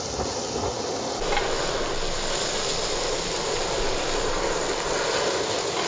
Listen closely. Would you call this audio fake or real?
real